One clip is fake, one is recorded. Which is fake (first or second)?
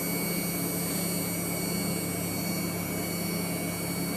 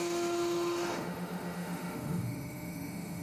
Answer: second